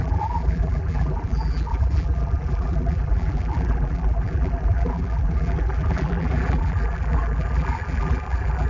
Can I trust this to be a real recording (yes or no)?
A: no